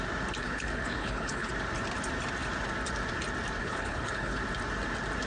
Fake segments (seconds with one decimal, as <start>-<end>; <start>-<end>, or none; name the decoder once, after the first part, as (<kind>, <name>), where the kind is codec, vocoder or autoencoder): 0.4-1.5 (codec, HILCodec); 3.6-4.4